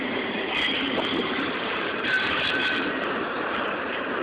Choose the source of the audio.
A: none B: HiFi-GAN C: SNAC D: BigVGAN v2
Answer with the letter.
D